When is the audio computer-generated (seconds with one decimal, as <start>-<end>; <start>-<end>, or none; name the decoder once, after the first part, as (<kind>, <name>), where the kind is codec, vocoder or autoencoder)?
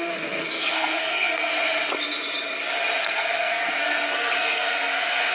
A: 0.0-1.5 (codec, SNAC); 3.0-5.3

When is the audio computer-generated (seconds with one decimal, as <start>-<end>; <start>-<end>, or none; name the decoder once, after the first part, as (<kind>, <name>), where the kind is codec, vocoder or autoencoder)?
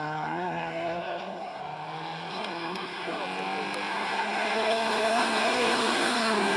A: 0.0-1.6 (codec, SNAC); 2.3-3.2; 3.9-6.6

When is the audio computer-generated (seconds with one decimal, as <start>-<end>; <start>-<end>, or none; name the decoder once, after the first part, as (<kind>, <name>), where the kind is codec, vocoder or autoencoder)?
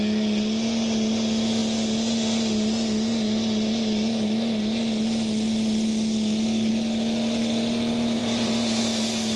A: 8.2-8.8 (vocoder, BigVGAN v2)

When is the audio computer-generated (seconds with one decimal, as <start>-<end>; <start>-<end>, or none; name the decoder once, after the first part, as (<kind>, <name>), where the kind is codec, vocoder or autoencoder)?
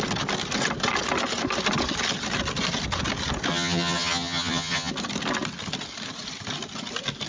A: 3.5-4.9 (vocoder, HiFi-GAN)